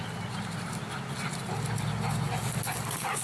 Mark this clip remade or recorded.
recorded